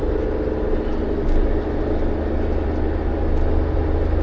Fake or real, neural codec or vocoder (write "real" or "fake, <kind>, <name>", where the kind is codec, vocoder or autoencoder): real